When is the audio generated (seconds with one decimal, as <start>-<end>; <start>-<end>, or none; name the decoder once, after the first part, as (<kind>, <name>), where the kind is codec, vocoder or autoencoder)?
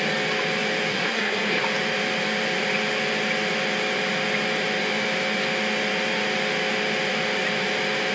0.9-1.6 (codec, SNAC)